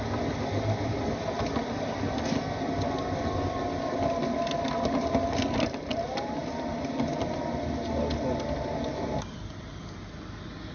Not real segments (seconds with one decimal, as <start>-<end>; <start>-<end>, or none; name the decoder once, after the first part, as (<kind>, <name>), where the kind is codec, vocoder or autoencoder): none